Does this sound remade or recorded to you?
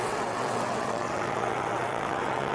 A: remade